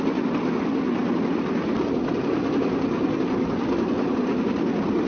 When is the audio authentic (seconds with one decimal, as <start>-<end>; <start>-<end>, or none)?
0.0-5.1